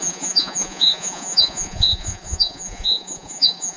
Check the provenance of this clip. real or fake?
fake